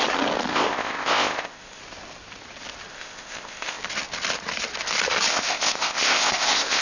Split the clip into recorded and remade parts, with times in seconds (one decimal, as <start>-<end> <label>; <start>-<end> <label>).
0.0-0.5 recorded; 0.5-1.8 remade; 1.8-2.9 recorded; 2.9-3.8 remade; 3.8-5.3 recorded; 5.3-6.8 remade

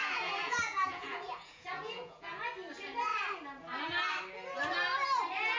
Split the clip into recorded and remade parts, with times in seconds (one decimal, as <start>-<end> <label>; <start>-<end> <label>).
0.0-2.4 remade; 2.4-5.6 recorded